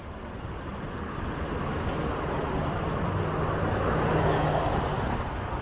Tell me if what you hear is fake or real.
real